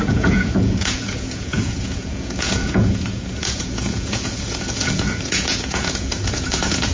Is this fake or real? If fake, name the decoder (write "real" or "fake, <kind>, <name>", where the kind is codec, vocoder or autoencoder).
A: fake, vocoder, Vocos